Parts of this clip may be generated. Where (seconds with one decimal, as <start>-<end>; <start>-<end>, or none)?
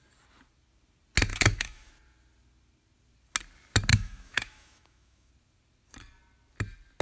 1.3-1.9; 3.9-5.3